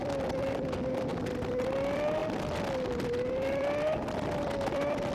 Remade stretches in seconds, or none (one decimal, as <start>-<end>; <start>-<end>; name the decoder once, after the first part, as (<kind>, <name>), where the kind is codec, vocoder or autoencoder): 0.0-1.1 (vocoder, BigVGAN v2); 1.6-2.2; 3.3-5.1